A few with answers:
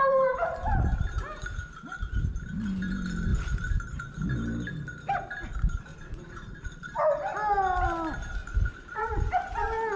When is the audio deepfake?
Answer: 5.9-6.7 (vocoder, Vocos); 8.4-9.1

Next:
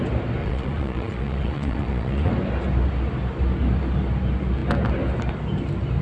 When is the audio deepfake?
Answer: 0.4-2.3 (vocoder, Vocos)

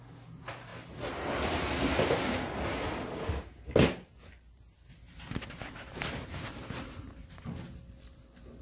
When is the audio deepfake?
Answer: none

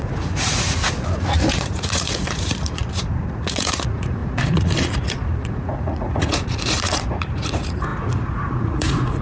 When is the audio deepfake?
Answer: 0.0-9.2 (vocoder, Vocos)